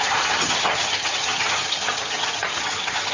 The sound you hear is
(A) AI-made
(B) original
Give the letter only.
A